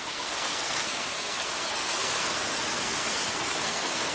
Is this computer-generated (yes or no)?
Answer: yes